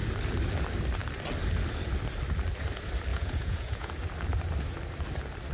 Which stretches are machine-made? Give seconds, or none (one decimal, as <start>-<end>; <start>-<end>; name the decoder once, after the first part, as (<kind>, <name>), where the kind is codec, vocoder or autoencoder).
3.1-3.9 (vocoder, Vocos)